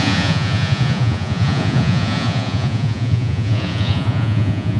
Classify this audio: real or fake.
fake